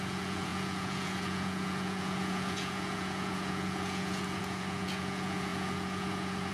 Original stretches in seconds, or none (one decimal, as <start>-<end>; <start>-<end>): none